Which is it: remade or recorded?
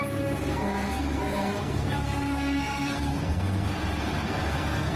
remade